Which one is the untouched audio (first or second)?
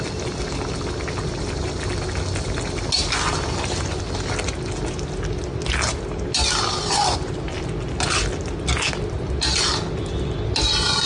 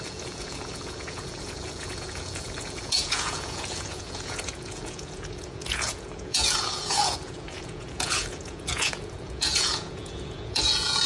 first